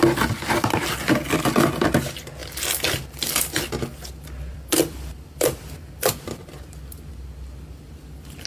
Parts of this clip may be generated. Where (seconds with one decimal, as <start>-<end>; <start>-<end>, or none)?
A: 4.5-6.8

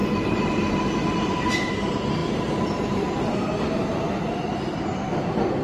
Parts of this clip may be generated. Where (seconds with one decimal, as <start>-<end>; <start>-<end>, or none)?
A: none

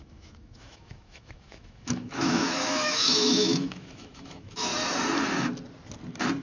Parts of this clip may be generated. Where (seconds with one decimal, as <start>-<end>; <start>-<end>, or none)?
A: 0.0-4.7